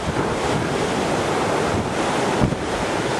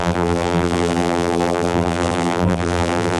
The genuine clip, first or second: first